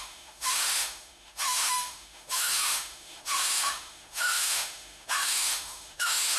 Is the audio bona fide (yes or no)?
no